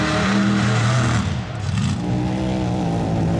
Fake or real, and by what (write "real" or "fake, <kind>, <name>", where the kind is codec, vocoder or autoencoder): real